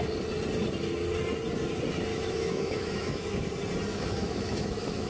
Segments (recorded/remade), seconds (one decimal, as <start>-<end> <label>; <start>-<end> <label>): 0.0-2.1 recorded; 2.1-3.5 remade; 3.5-3.9 recorded; 3.9-5.1 remade